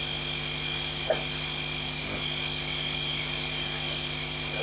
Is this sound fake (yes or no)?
no